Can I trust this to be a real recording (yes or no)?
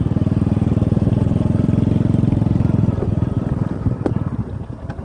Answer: yes